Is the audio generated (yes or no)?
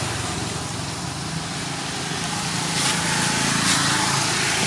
no